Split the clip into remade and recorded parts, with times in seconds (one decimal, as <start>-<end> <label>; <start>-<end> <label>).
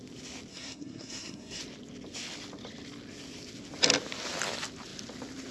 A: 0.0-0.5 recorded; 0.5-1.6 remade; 1.6-5.5 recorded